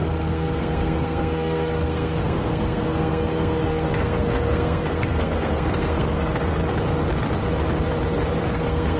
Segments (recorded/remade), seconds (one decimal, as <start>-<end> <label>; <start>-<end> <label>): 0.0-6.6 remade; 6.6-8.5 recorded; 8.5-9.0 remade

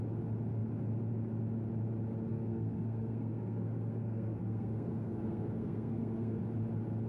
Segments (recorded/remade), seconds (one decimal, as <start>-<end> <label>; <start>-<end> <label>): 0.0-2.3 recorded; 2.3-6.4 remade; 6.4-7.1 recorded

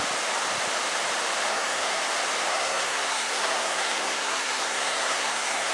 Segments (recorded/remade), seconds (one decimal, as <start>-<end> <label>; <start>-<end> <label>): 0.0-1.5 recorded; 1.5-2.0 remade; 2.0-2.5 recorded; 2.5-5.7 remade

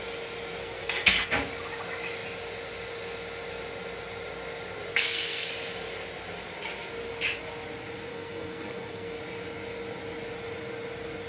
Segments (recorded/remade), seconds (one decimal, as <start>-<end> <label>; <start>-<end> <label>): 0.0-0.6 recorded; 0.6-1.3 remade; 1.3-4.9 recorded; 4.9-5.5 remade; 5.5-8.1 recorded; 8.1-9.2 remade; 9.2-11.3 recorded

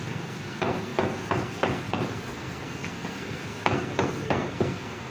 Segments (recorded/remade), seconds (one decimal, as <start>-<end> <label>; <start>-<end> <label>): 0.0-5.1 remade

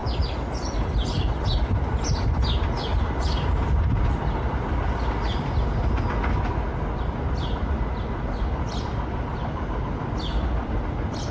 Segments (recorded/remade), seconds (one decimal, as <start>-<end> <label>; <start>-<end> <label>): 0.0-11.3 recorded

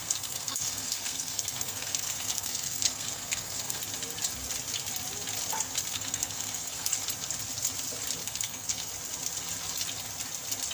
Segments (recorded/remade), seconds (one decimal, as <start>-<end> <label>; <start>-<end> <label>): 0.0-3.8 remade; 3.8-5.9 recorded; 5.9-6.9 remade; 6.9-8.2 recorded; 8.2-8.9 remade; 8.9-10.7 recorded